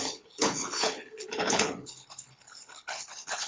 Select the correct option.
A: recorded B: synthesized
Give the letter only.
B